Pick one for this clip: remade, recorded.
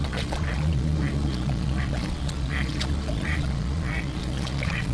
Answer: remade